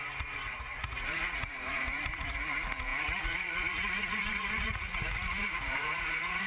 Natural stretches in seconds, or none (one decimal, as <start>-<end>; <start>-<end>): none